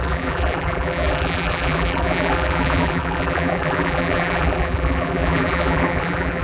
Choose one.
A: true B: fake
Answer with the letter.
B